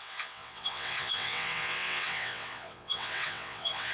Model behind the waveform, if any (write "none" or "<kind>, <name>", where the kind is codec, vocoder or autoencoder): vocoder, WaveNeXt